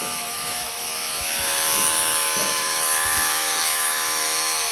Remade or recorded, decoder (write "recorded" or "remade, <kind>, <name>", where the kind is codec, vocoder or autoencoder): remade, autoencoder, DAC-VAE